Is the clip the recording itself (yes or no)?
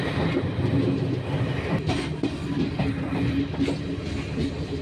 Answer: yes